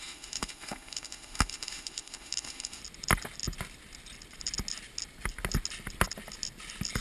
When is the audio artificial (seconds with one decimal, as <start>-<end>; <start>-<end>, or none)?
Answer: 0.0-2.8